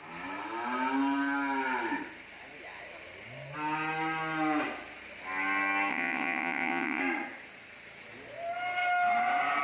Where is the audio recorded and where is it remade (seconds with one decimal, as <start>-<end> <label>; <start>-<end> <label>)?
0.0-5.9 recorded; 5.9-7.0 remade; 7.0-9.6 recorded